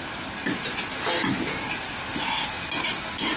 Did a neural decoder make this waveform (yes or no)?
no